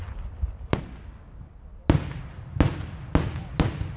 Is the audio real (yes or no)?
yes